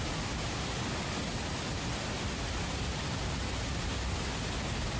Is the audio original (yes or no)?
yes